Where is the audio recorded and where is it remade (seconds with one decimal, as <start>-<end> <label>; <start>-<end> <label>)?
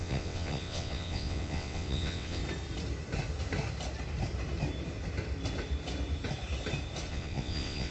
0.0-2.4 remade; 2.4-7.1 recorded; 7.1-7.9 remade